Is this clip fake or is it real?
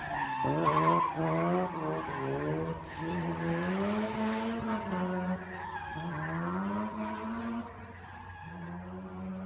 real